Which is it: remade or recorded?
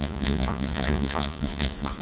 remade